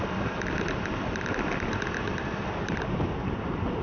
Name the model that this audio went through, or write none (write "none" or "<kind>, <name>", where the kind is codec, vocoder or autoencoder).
vocoder, BigVGAN v2